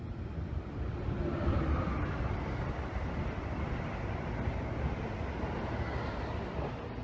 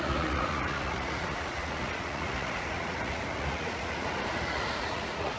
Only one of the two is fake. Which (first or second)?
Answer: second